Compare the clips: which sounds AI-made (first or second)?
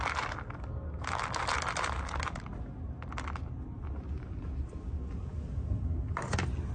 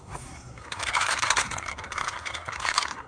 second